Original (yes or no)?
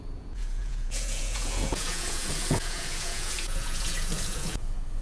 no